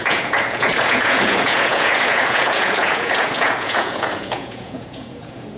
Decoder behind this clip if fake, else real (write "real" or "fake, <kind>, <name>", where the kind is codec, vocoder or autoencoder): fake, vocoder, Vocos